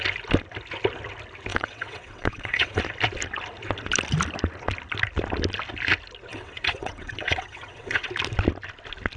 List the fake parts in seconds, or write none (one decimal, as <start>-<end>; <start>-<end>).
1.5-2.8; 6.3-8.1